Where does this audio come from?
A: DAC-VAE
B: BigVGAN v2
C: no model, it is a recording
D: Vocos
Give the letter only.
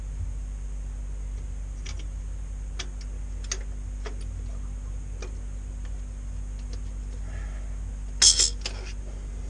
C